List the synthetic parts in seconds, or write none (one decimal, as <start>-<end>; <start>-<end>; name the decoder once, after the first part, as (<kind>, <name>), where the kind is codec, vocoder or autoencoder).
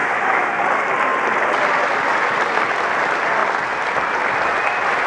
0.0-0.6 (autoencoder, DAC-VAE)